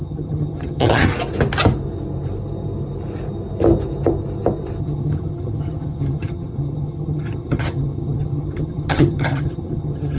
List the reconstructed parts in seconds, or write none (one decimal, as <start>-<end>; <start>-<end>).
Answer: 0.0-1.1; 4.8-10.2